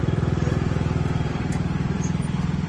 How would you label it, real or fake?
fake